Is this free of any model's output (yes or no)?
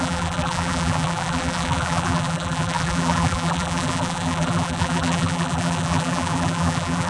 no